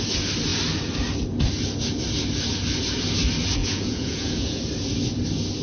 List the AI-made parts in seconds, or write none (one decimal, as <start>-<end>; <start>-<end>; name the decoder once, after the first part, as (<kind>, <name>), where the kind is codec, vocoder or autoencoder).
3.6-4.6 (vocoder, Vocos)